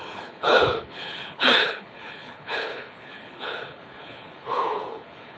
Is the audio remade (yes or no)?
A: yes